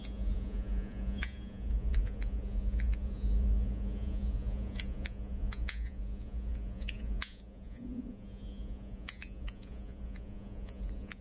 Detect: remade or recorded remade